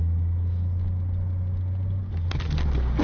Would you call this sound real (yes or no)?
yes